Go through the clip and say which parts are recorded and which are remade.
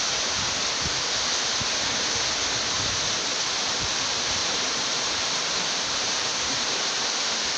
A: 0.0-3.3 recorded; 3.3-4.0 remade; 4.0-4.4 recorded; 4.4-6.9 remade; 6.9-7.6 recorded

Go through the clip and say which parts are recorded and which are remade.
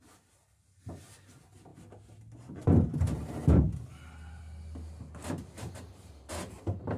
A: 0.0-7.0 recorded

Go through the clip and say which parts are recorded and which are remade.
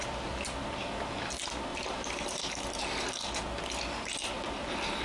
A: 0.0-1.7 recorded; 1.7-2.8 remade; 2.8-5.0 recorded